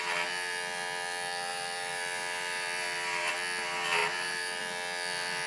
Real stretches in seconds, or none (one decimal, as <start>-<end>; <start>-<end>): 0.0-1.5; 3.3-4.0; 4.6-5.5